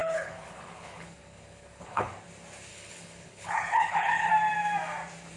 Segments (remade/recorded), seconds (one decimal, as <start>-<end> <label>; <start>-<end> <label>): 0.0-2.1 remade; 2.1-2.7 recorded; 2.7-4.3 remade; 4.3-5.4 recorded